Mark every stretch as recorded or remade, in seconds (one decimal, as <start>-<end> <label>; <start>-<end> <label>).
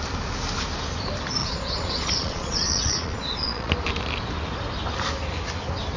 0.0-1.4 recorded; 1.4-3.7 remade; 3.7-6.0 recorded